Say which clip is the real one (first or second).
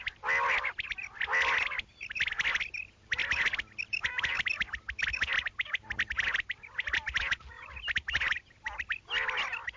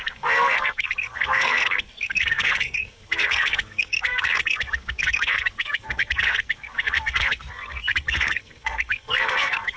first